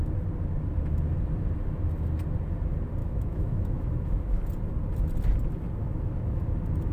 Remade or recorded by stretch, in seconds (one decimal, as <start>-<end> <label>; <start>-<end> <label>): 0.0-3.0 recorded; 3.0-4.4 remade; 4.4-5.8 recorded; 5.8-6.4 remade; 6.4-6.9 recorded